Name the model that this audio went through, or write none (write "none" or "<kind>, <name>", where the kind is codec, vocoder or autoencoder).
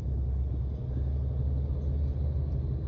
none